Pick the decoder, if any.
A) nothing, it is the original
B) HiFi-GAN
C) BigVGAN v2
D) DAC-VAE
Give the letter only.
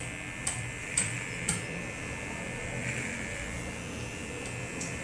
C